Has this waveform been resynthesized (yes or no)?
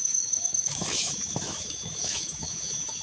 yes